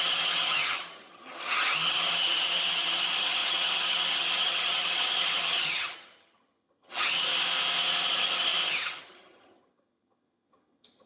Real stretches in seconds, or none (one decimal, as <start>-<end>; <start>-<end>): 7.3-8.1

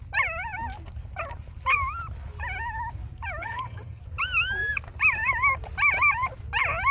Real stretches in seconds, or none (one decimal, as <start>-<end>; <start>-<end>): 0.0-3.4; 4.0-6.9

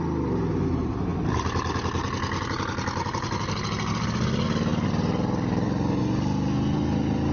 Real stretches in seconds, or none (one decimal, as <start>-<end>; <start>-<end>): 0.0-7.3

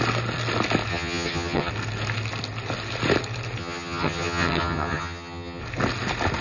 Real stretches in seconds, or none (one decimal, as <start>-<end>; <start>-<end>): 0.0-0.9; 1.7-3.6; 5.6-6.4

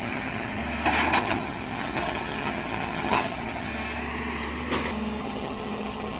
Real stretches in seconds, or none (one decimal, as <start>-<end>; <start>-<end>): 0.6-1.2; 3.7-5.2

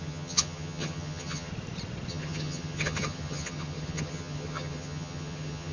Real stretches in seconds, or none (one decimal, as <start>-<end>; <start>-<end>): 1.5-2.1